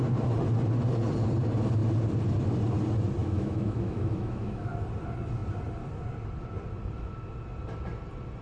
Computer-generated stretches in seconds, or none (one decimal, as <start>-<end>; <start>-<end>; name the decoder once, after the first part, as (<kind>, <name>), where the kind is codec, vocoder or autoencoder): 3.2-4.7 (autoencoder, DAC-VAE)